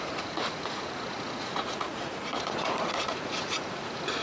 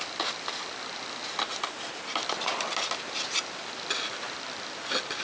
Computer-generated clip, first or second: first